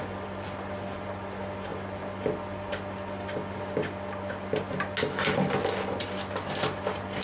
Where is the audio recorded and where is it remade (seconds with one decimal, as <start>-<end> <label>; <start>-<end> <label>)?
0.0-7.2 recorded